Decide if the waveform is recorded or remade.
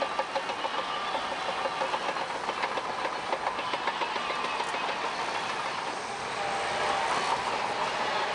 recorded